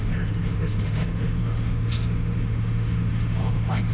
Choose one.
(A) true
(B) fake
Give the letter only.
B